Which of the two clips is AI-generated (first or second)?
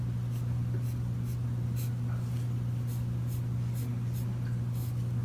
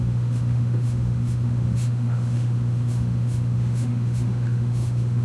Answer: second